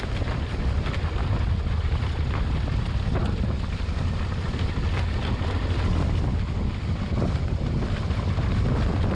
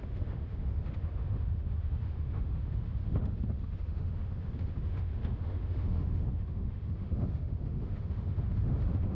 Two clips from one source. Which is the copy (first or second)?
second